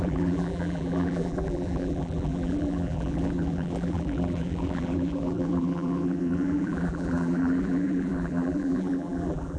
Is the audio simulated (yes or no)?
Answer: yes